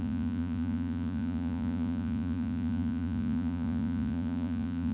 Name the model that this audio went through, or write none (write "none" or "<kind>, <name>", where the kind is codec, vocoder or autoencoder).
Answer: vocoder, Vocos